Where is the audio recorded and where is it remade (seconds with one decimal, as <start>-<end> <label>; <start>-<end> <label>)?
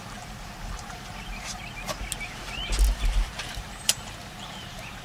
0.0-1.6 remade; 1.6-3.1 recorded; 3.1-5.0 remade